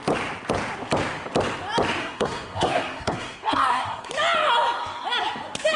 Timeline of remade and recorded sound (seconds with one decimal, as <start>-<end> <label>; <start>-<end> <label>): 0.0-2.0 recorded; 2.0-4.1 remade; 4.1-5.8 recorded